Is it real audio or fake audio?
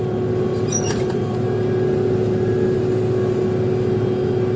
real